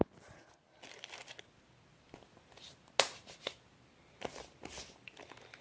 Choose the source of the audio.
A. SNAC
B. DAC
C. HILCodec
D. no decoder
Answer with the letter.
D